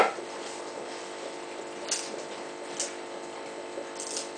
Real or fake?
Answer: real